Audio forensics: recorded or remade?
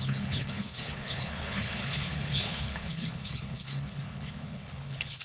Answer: remade